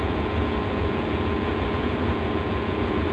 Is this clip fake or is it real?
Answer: fake